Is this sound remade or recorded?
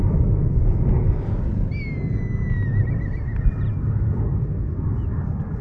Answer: recorded